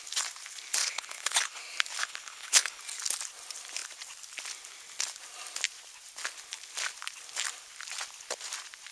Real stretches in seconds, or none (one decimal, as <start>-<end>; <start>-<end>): 0.0-0.8; 1.6-2.0; 2.8-8.9